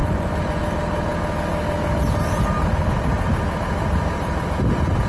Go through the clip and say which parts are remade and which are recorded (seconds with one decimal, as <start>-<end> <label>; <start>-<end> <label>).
0.0-0.6 remade; 0.6-5.1 recorded